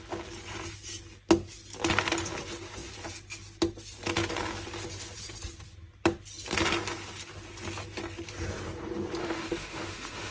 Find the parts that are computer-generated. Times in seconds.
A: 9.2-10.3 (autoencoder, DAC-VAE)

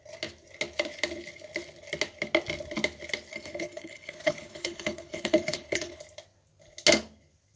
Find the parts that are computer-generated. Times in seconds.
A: 3.3-6.0 (codec, HILCodec)

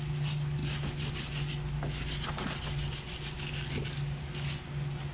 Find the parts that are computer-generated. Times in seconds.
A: none

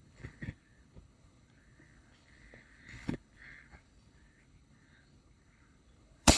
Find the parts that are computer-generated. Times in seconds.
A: 0.0-6.4 (codec, HILCodec)

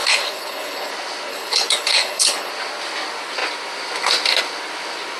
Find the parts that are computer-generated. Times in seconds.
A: 0.0-0.9 (codec, HILCodec); 1.3-2.5

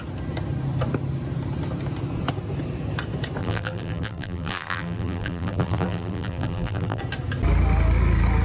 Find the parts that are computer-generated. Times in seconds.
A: 3.4-7.0 (vocoder, BigVGAN v2)

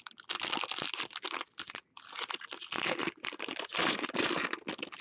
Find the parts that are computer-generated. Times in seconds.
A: 3.0-4.3 (vocoder, BigVGAN v2)

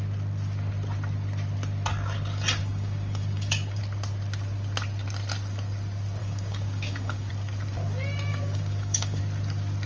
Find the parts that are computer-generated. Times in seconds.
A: 2.6-3.8 (codec, DAC); 6.2-7.3; 8.3-9.2